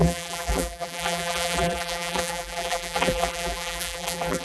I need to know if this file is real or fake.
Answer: fake